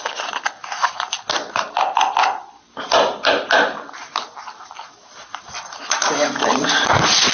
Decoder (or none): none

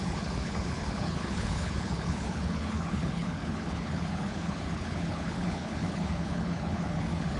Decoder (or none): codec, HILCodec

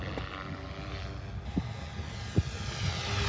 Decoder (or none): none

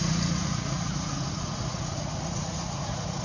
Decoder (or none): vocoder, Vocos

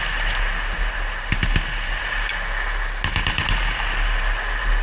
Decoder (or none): none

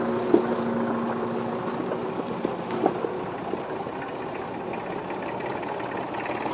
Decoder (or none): none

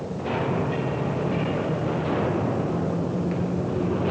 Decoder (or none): none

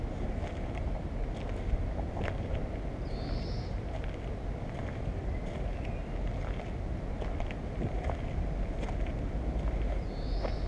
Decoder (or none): none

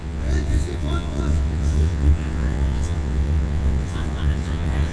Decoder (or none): vocoder, WaveNeXt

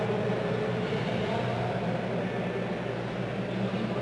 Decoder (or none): none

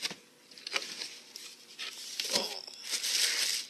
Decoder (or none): none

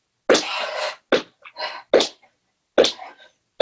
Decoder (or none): none